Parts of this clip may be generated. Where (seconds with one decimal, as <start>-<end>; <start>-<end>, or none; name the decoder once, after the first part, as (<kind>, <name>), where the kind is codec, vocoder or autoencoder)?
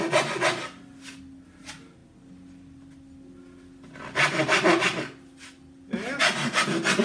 none